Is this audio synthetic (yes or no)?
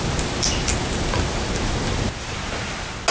no